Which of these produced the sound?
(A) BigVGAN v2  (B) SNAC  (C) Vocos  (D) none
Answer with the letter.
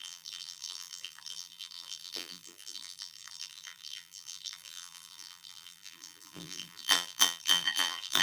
A